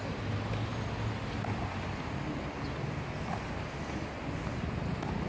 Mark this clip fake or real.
real